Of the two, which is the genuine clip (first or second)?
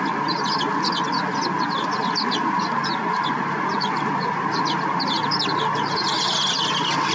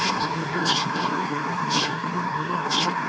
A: first